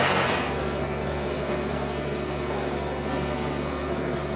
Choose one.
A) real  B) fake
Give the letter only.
B